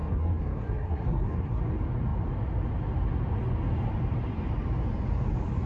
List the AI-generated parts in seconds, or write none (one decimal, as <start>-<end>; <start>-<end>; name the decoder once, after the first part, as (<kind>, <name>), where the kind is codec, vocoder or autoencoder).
0.0-1.6 (codec, SNAC)